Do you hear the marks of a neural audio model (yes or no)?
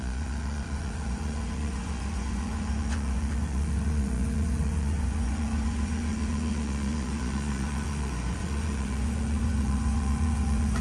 yes